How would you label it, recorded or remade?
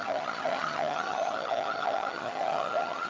remade